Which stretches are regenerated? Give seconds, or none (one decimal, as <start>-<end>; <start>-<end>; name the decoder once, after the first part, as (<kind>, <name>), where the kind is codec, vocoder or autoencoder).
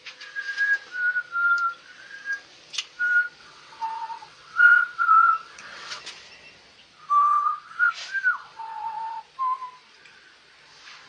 3.4-6.0 (vocoder, WaveNeXt); 7.2-7.9; 8.4-9.2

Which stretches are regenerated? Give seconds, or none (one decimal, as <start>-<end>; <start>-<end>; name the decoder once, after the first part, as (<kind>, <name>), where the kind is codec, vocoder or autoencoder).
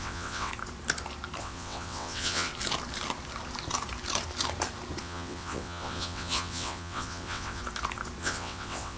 0.0-0.5 (vocoder, WaveNeXt); 1.4-2.5; 5.0-7.6; 8.2-9.0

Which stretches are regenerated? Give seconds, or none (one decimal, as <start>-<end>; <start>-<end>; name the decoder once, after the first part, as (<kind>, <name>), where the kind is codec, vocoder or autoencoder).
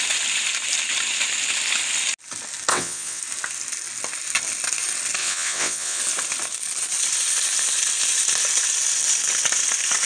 2.7-3.2 (vocoder, WaveNeXt); 5.2-6.0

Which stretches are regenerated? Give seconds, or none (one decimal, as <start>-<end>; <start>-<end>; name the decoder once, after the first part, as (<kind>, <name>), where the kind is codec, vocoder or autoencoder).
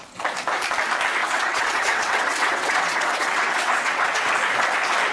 1.2-4.3 (vocoder, WaveNeXt)